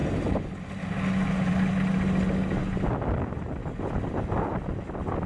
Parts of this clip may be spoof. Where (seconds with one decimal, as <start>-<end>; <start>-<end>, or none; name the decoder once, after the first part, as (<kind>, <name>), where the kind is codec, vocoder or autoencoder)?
none